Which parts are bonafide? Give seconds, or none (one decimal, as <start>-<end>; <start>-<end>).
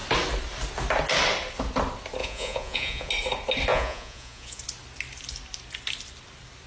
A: 0.0-2.2; 3.1-3.7; 4.6-6.7